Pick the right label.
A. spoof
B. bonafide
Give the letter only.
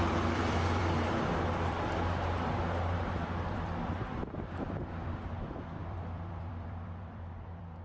A